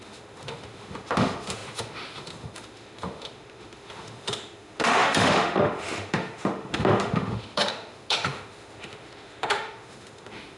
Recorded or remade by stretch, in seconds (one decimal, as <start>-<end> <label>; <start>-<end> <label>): 0.0-10.6 remade